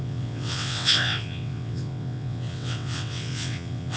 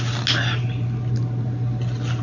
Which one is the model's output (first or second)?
first